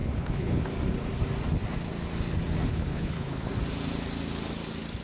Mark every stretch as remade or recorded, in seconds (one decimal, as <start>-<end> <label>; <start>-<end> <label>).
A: 0.0-0.6 remade; 0.6-2.7 recorded; 2.7-3.5 remade; 3.5-5.0 recorded